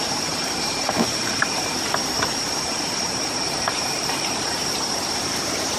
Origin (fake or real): fake